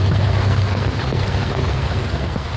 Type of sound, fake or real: fake